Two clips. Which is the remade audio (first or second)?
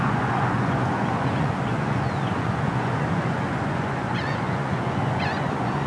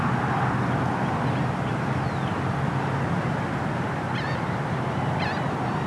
first